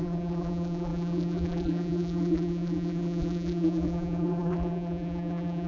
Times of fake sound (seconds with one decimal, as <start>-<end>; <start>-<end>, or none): 0.0-5.7